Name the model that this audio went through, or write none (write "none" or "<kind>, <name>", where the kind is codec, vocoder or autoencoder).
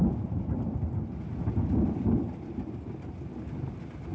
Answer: none